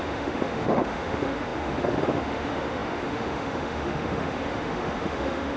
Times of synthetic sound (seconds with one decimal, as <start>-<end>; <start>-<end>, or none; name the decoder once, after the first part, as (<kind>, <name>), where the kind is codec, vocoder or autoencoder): 0.0-5.6 (autoencoder, DAC-VAE)